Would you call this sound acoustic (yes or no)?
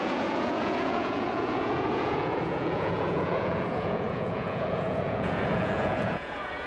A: no